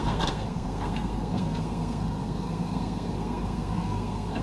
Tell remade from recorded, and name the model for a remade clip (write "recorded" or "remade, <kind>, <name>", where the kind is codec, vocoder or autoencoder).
remade, codec, SNAC